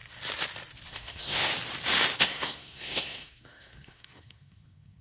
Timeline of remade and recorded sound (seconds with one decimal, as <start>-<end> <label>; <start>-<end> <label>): 0.0-0.9 recorded; 0.9-1.5 remade; 1.5-2.2 recorded; 2.2-5.0 remade